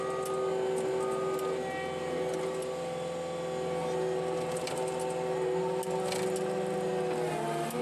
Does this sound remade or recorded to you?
recorded